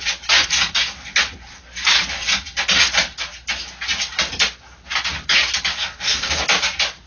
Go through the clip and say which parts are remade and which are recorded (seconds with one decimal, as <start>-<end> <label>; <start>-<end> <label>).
0.0-5.7 recorded; 5.7-6.4 remade; 6.4-7.1 recorded